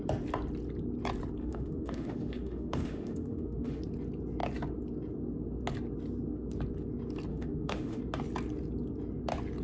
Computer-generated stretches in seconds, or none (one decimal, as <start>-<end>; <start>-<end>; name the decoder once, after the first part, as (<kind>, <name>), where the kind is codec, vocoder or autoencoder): 1.4-3.8 (autoencoder, DAC-VAE); 7.3-8.0